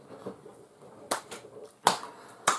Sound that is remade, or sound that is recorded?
recorded